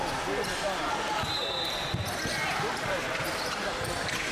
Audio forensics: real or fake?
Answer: real